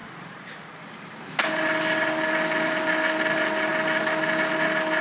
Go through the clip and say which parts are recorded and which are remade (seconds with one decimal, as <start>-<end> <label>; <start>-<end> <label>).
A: 0.0-1.3 remade; 1.3-5.0 recorded